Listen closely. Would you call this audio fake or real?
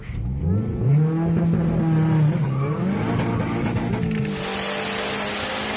real